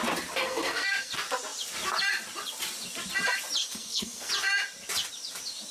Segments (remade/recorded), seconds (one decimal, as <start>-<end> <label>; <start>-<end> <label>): 0.0-0.4 recorded; 0.4-1.1 remade; 1.1-3.6 recorded; 3.6-4.3 remade; 4.3-5.7 recorded